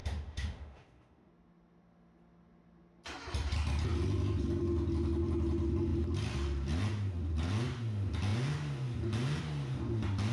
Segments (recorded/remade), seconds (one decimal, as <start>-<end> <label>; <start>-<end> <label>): 0.0-1.3 remade; 1.3-10.3 recorded